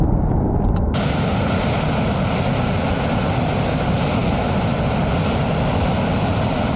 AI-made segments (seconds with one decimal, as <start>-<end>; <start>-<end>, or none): none